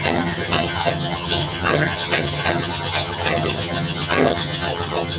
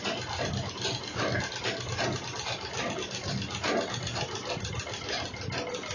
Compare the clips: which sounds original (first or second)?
second